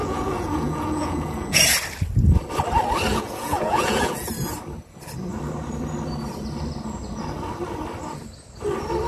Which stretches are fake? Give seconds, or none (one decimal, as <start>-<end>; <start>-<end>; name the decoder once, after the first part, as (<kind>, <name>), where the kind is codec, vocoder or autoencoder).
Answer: 0.0-1.6 (vocoder, Vocos); 3.1-4.3